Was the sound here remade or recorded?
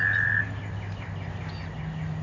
recorded